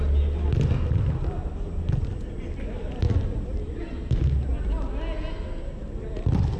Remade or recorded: recorded